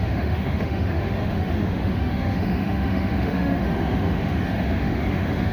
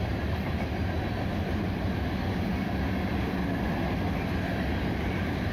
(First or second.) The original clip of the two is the second